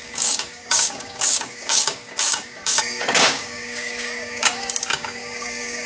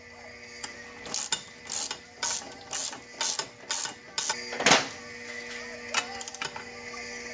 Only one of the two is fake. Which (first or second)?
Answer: first